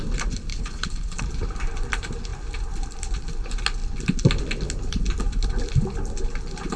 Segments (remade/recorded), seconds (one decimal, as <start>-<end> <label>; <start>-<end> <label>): 0.0-0.5 recorded; 0.5-1.2 remade; 1.2-6.8 recorded